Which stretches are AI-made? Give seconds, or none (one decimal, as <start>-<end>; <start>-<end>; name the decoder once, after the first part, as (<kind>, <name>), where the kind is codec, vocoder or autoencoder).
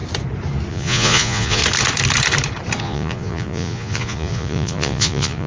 0.7-1.6 (vocoder, Vocos); 2.8-5.5